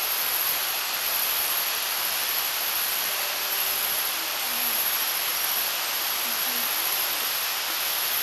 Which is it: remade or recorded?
recorded